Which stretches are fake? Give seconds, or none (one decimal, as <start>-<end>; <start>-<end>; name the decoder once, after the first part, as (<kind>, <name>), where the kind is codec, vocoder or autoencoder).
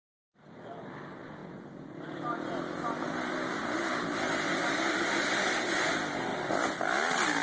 none